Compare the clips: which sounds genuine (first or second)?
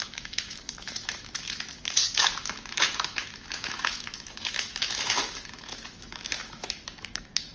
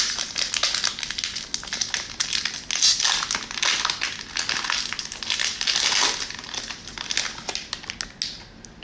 second